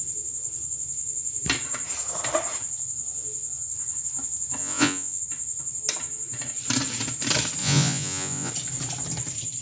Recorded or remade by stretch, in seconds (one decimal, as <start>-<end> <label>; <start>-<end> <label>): 0.0-4.6 recorded; 4.6-5.2 remade; 5.2-7.6 recorded; 7.6-8.5 remade; 8.5-9.6 recorded